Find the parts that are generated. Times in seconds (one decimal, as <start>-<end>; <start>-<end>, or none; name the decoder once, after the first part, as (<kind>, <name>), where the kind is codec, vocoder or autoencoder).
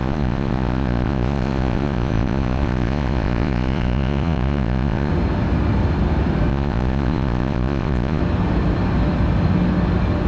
0.0-5.1 (vocoder, Vocos); 6.5-8.2